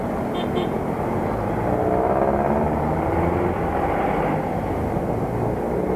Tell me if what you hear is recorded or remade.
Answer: recorded